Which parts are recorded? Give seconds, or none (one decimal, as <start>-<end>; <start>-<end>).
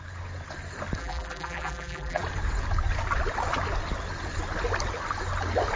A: 0.0-1.0; 2.2-5.8